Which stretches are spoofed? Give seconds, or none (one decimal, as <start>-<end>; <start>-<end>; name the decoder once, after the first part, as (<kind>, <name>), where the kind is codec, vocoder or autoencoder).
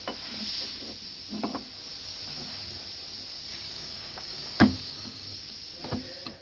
3.5-5.5 (codec, DAC)